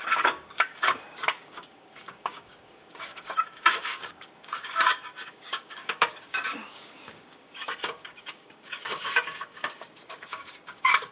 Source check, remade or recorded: remade